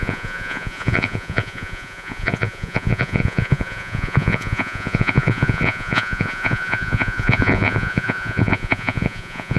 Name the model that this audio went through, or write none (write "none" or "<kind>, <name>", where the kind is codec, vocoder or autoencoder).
vocoder, Vocos